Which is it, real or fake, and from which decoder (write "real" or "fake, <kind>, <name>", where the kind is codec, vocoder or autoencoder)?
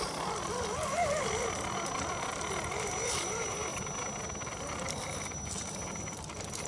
real